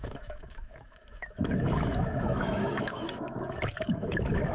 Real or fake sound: fake